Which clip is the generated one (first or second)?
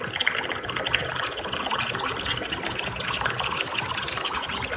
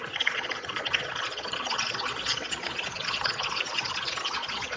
second